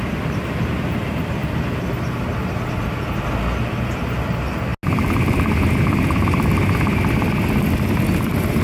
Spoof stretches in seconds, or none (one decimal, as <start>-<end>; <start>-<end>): none